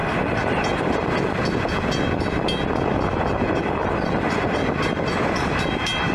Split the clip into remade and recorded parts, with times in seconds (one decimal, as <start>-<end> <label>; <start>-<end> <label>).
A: 0.0-1.1 remade; 1.1-6.1 recorded